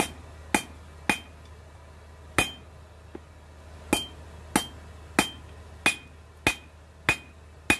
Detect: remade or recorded recorded